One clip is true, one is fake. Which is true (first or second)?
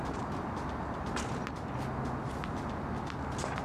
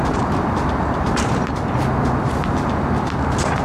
first